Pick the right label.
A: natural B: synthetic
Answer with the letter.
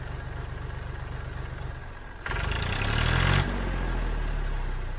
A